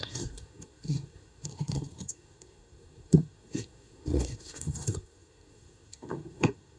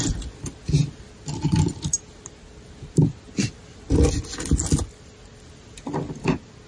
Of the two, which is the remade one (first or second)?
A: first